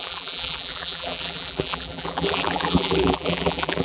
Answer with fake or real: fake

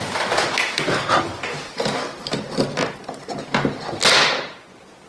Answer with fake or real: real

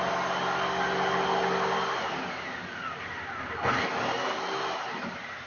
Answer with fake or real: real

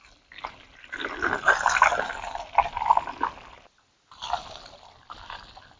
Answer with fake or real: real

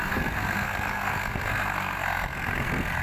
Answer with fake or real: fake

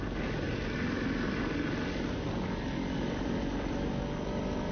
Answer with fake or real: real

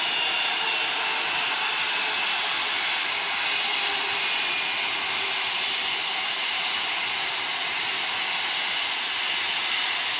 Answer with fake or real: real